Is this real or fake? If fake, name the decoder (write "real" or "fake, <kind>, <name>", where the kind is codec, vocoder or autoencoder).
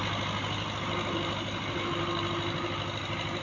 real